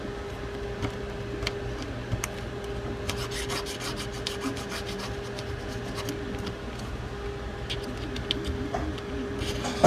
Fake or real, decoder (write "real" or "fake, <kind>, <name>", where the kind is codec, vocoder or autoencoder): real